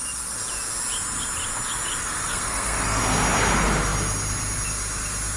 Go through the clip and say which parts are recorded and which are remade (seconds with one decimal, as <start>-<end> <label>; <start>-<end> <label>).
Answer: 0.0-2.0 recorded; 2.0-3.0 remade; 3.0-5.4 recorded